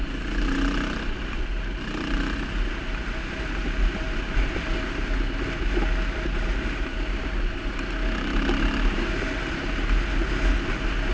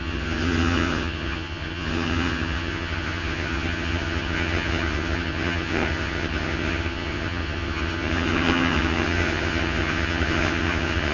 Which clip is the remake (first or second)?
second